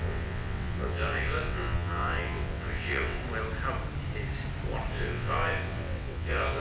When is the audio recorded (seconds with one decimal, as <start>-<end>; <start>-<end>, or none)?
3.2-4.9